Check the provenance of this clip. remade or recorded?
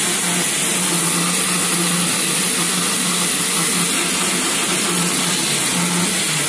recorded